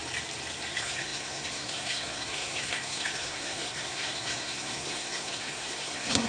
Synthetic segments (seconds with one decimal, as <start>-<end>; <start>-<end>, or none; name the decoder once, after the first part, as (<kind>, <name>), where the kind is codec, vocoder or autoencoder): 0.7-6.3 (codec, SNAC)

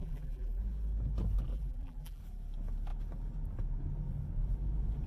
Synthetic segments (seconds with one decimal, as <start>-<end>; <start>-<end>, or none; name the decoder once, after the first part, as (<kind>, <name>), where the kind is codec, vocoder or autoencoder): 0.0-0.6 (vocoder, BigVGAN v2); 1.5-2.2